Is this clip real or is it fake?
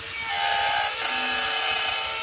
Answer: real